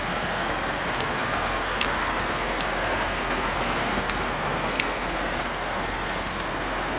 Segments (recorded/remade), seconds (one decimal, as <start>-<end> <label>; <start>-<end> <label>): 0.0-7.0 remade